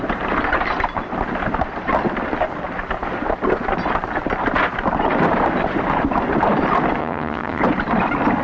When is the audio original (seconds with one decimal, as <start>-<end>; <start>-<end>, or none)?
0.0-7.0; 7.6-8.4